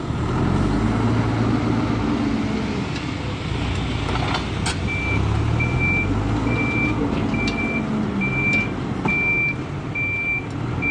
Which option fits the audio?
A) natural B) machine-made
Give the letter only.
A